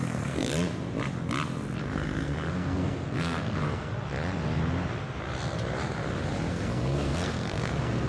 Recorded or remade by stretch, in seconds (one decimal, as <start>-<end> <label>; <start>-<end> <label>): 0.0-0.5 remade; 0.5-1.8 recorded; 1.8-3.9 remade; 3.9-6.5 recorded; 6.5-8.1 remade